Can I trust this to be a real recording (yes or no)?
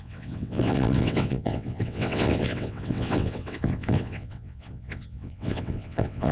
no